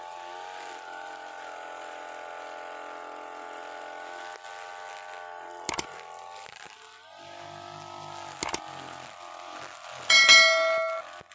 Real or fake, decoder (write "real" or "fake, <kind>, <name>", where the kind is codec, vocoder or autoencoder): real